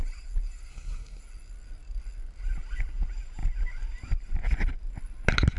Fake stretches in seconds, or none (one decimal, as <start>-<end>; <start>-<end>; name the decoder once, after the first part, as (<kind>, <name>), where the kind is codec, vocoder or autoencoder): 0.7-1.2 (codec, SNAC)